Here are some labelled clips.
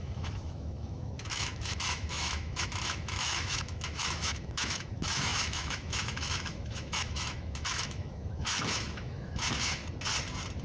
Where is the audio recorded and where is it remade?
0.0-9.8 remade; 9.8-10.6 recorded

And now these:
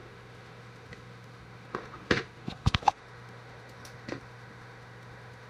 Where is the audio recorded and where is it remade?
0.0-5.5 remade

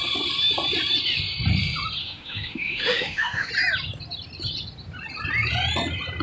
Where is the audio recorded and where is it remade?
0.0-2.0 recorded; 2.0-3.5 remade; 3.5-6.2 recorded